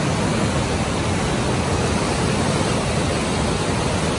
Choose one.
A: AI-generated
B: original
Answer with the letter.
B